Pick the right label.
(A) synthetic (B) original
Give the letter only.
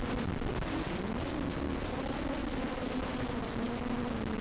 B